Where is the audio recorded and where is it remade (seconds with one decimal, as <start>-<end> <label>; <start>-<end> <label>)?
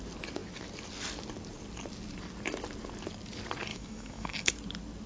0.0-3.7 recorded; 3.7-4.5 remade; 4.5-5.1 recorded